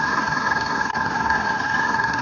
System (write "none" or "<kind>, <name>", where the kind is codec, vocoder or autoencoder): codec, SNAC